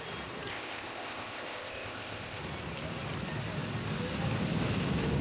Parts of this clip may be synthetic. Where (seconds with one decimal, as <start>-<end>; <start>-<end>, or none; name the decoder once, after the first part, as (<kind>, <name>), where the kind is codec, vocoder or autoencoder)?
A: 0.5-2.4 (codec, ZipCodec)